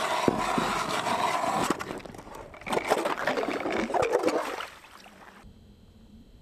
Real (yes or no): yes